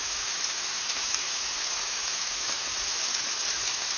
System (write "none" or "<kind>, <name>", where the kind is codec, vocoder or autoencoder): autoencoder, DAC-VAE